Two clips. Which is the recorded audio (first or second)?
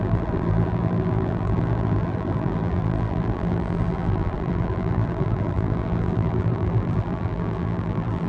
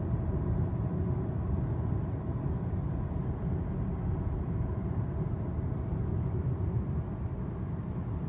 second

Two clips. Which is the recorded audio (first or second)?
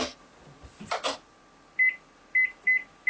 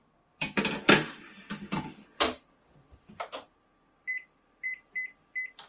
first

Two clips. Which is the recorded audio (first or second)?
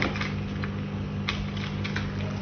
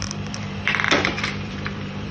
first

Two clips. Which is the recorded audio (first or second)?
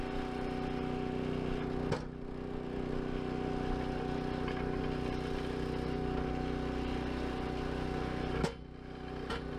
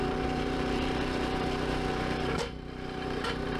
first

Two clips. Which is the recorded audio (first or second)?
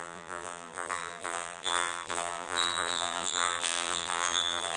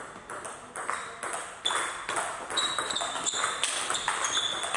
second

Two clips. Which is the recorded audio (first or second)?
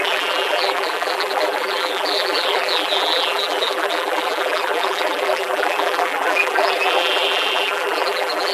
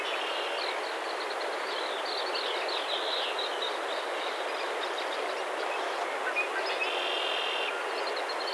second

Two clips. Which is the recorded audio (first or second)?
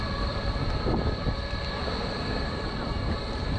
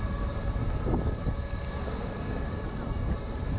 second